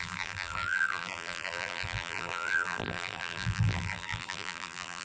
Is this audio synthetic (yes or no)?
yes